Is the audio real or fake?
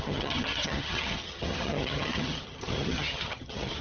fake